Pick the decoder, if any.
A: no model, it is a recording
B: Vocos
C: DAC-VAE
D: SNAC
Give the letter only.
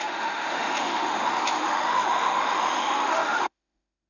C